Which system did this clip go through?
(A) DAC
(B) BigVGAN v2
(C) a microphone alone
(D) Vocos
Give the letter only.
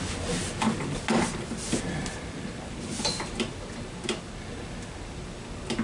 C